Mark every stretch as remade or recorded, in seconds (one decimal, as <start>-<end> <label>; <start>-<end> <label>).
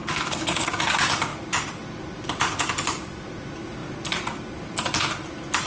0.0-0.9 remade; 0.9-5.7 recorded